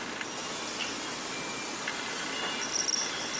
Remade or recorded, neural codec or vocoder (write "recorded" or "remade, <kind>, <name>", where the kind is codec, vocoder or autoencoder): recorded